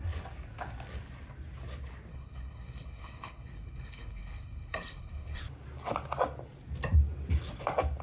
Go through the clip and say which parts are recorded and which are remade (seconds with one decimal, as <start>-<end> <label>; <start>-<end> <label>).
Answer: 0.0-2.1 recorded; 2.1-5.4 remade; 5.4-8.0 recorded